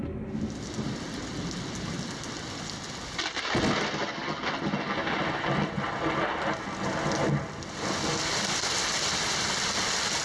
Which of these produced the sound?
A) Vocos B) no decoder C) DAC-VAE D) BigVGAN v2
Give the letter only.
B